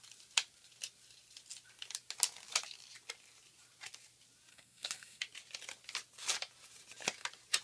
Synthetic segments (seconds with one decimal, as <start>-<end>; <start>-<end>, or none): 4.5-5.2